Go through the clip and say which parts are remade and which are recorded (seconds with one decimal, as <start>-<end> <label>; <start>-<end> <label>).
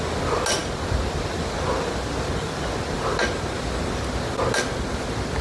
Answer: 0.0-5.4 recorded